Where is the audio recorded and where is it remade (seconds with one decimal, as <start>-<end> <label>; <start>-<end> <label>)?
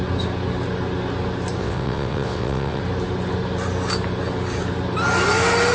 0.0-1.6 recorded; 1.6-2.8 remade; 2.8-5.7 recorded